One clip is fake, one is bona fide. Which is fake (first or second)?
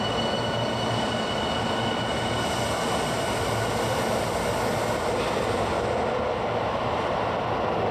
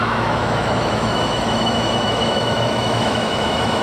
second